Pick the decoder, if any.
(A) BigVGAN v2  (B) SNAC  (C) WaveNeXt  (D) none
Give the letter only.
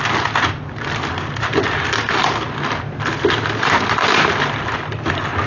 A